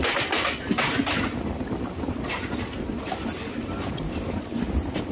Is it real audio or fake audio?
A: real